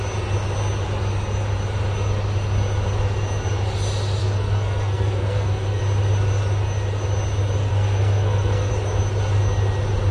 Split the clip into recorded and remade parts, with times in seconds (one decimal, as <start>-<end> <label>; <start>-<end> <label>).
0.0-4.2 recorded; 4.2-5.8 remade; 5.8-7.7 recorded; 7.7-8.7 remade; 8.7-10.1 recorded